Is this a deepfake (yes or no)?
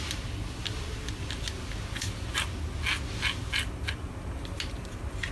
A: no